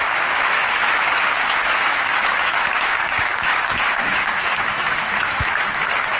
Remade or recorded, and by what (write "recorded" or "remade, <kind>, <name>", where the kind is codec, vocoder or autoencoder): remade, autoencoder, DAC-VAE